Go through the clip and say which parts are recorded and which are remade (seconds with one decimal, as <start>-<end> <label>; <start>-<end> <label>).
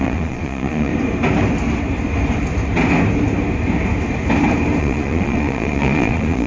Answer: 0.0-0.9 remade; 0.9-4.8 recorded; 4.8-6.5 remade